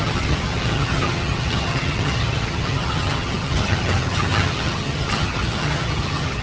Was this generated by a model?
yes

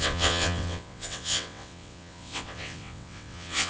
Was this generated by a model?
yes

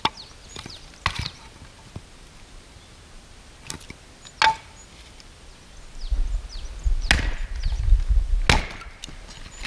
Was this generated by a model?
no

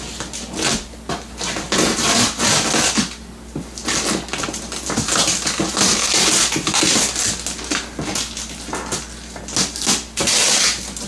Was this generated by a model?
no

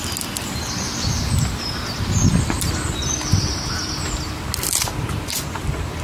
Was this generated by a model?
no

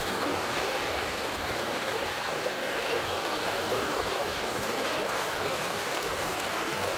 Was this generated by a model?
yes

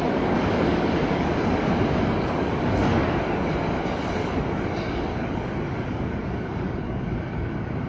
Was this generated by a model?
yes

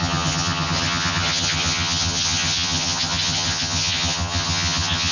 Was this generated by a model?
yes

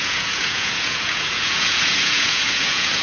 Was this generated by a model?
yes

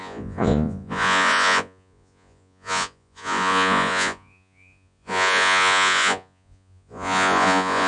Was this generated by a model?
yes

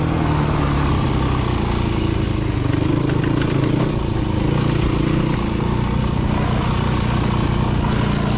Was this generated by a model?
no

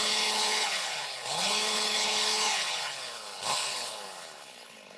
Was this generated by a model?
yes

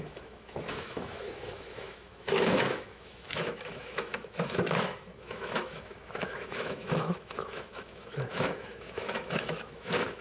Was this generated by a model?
yes